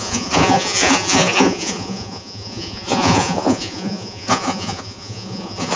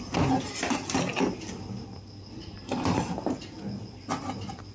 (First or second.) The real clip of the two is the second